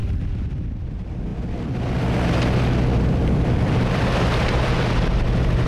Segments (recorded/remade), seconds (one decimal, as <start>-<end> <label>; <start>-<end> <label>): 0.0-1.3 remade; 1.3-3.1 recorded; 3.1-5.7 remade